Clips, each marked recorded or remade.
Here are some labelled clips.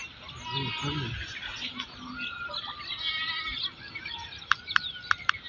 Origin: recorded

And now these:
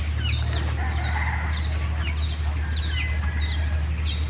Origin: recorded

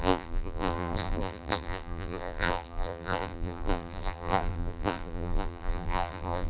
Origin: remade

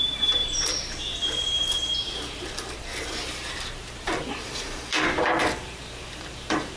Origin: remade